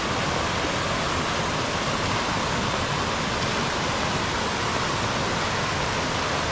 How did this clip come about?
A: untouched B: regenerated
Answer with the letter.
A